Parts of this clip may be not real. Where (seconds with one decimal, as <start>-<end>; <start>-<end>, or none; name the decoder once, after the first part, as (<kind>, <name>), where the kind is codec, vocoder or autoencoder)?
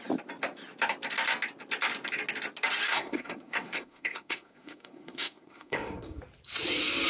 2.9-6.2 (codec, SNAC)